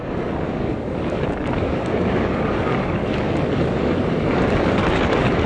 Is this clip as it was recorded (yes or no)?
no